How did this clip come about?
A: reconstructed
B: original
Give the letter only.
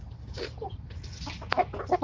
B